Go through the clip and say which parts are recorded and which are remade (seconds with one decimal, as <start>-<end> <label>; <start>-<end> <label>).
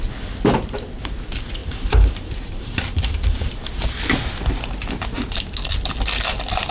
0.0-1.6 recorded; 1.6-3.7 remade; 3.7-6.7 recorded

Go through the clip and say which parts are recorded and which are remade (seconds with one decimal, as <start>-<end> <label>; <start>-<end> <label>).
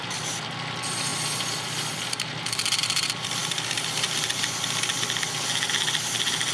0.0-6.5 recorded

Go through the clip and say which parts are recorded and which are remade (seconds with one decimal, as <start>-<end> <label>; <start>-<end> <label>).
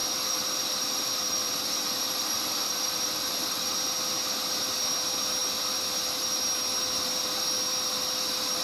0.0-3.6 remade; 3.6-8.6 recorded